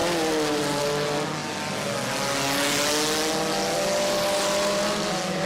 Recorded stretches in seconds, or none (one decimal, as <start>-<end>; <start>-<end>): 0.0-5.5